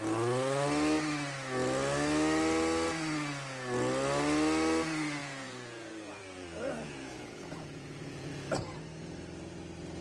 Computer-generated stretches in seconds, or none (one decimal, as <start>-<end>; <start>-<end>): 5.2-8.3